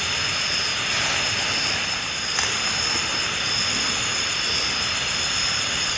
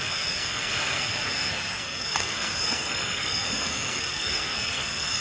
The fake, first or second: second